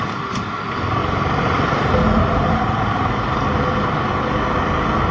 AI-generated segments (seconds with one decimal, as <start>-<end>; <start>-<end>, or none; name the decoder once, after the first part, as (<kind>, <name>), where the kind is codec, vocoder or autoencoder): none